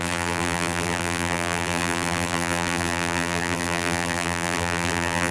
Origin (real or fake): fake